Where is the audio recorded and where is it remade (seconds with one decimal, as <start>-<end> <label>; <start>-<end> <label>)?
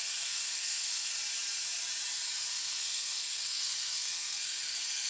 0.0-1.1 remade; 1.1-2.5 recorded; 2.5-5.1 remade